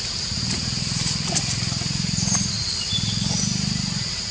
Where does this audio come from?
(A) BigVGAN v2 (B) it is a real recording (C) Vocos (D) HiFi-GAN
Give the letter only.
B